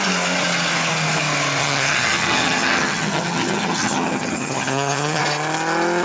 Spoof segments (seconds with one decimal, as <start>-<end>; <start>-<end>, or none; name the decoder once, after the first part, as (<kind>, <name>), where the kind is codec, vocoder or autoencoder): 1.6-5.2 (vocoder, HiFi-GAN)